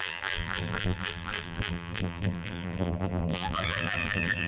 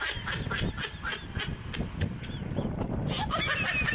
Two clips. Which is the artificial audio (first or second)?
first